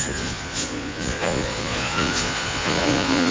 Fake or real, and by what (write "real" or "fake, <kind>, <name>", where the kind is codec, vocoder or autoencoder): fake, vocoder, Vocos